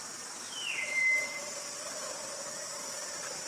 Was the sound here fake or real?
real